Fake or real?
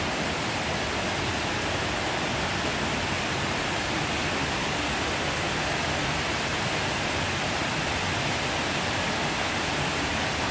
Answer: real